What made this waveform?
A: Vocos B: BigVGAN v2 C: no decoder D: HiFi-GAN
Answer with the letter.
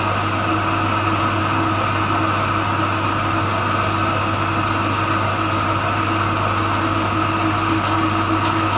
C